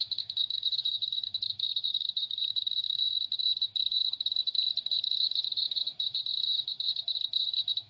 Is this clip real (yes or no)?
no